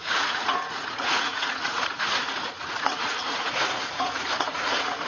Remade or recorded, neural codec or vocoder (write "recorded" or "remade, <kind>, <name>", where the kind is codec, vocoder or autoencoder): remade, vocoder, Vocos